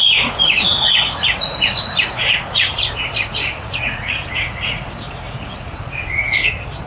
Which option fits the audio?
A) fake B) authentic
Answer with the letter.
A